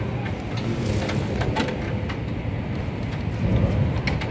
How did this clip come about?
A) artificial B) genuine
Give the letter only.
B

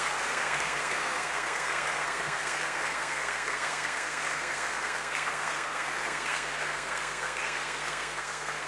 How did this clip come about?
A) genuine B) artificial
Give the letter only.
B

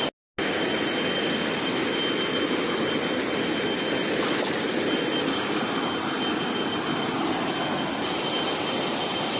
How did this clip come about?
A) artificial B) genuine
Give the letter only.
B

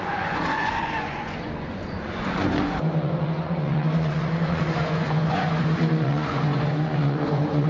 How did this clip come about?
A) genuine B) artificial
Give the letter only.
B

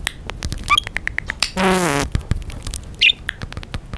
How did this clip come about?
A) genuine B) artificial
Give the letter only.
A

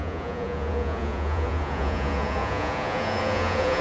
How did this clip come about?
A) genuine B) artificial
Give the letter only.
B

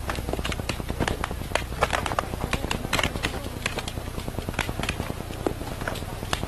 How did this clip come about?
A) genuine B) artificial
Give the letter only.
A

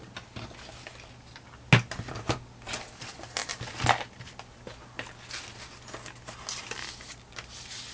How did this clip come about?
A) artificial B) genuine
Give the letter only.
B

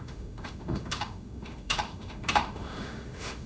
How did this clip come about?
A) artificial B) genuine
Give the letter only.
A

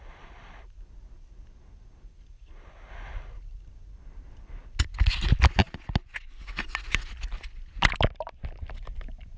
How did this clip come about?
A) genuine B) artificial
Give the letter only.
A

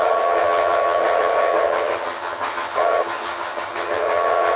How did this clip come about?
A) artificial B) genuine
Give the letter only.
A